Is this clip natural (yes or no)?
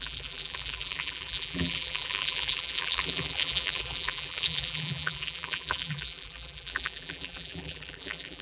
no